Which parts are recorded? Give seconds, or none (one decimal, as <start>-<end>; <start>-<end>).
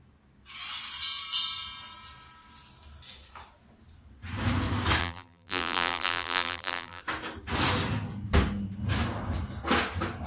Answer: 0.0-5.0; 7.0-10.3